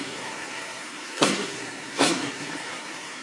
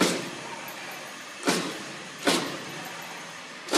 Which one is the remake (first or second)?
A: first